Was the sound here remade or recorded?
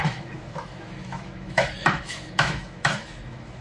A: remade